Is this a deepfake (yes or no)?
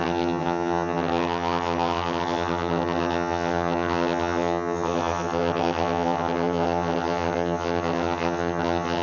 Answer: yes